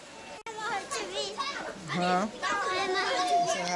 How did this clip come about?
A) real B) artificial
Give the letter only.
A